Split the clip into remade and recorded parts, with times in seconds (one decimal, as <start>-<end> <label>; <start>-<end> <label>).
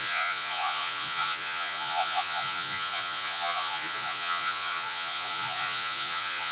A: 0.0-6.5 remade